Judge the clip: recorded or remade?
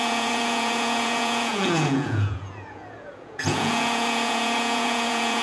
remade